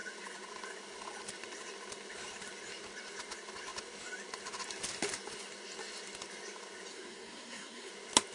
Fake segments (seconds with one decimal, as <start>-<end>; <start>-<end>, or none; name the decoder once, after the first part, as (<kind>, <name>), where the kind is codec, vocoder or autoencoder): 6.9-7.9 (codec, SNAC)